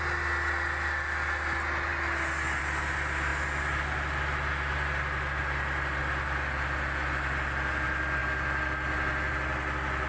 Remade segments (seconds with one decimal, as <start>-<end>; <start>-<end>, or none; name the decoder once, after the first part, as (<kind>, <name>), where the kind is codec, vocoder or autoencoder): none